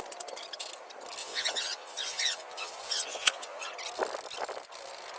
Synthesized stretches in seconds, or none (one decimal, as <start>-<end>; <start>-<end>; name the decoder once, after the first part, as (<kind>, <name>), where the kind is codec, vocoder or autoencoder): 1.2-3.7 (vocoder, Vocos)

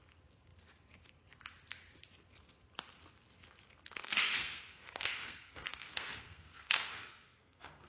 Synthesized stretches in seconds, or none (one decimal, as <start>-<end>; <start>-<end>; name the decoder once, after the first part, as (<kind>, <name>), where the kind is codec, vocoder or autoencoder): 4.0-7.9 (codec, SNAC)